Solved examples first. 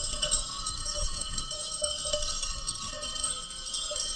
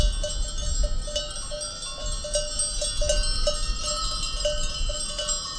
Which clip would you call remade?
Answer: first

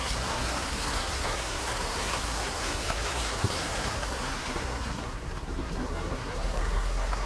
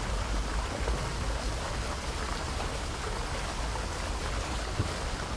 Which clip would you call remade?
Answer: first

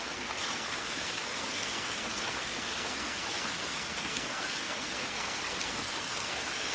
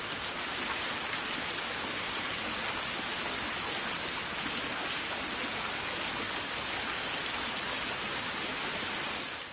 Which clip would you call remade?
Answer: first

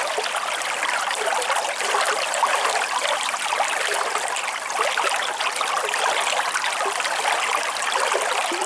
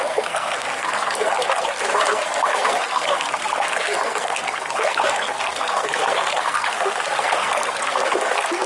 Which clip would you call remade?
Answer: second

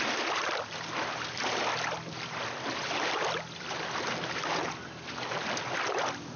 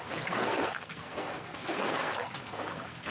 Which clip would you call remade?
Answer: second